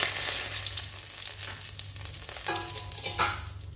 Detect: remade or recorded recorded